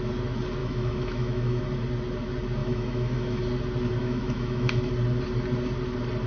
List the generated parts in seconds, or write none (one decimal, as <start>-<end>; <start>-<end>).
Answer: 0.6-1.6; 2.6-3.4; 4.0-4.9